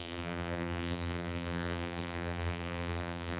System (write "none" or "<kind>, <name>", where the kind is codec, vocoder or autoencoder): vocoder, BigVGAN v2